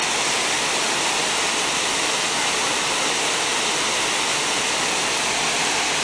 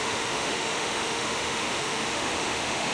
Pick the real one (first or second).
first